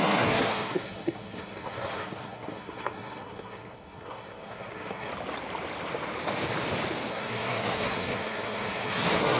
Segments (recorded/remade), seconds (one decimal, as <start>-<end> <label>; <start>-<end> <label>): 0.0-5.1 remade; 5.1-7.1 recorded; 7.1-9.4 remade